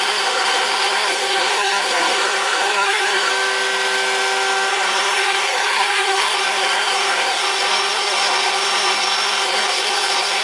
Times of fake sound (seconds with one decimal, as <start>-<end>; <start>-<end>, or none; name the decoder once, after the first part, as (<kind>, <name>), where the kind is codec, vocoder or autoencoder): 0.0-3.3 (codec, SNAC); 4.7-10.4